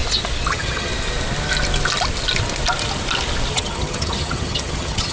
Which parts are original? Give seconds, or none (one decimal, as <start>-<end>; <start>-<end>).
0.0-0.5; 0.9-3.5